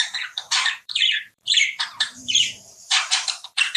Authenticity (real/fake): fake